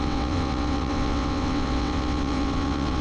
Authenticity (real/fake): fake